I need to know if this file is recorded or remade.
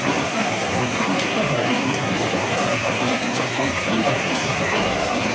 remade